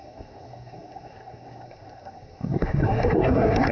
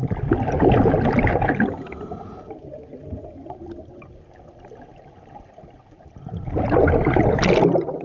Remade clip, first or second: first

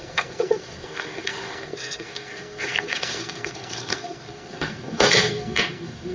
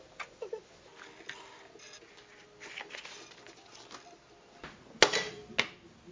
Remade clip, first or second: first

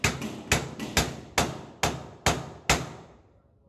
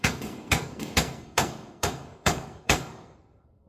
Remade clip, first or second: second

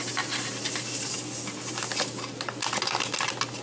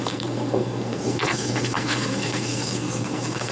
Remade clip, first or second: second